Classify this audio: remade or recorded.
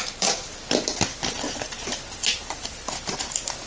recorded